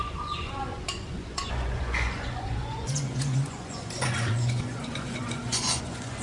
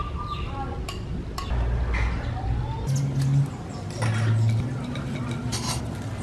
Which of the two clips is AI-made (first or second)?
first